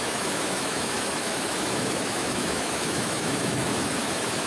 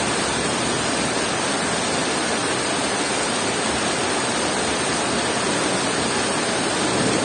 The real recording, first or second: second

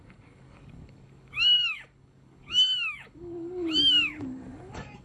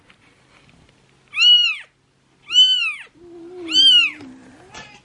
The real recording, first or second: second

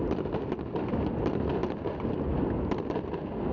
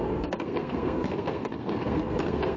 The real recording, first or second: first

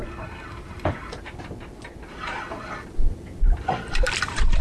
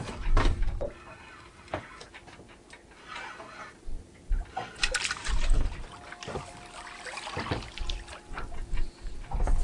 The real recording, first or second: second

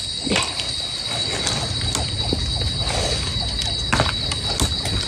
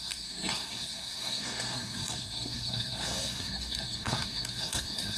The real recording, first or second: first